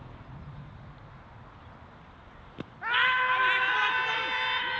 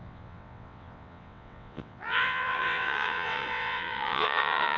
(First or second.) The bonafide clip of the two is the first